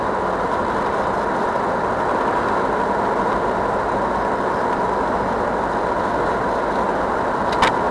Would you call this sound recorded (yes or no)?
yes